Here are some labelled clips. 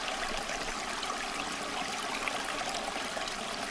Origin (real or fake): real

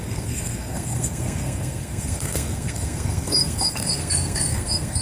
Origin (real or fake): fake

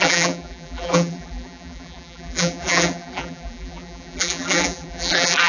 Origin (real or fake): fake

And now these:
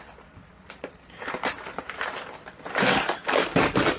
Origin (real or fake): real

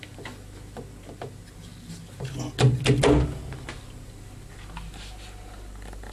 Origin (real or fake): real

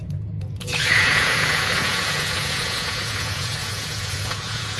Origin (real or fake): fake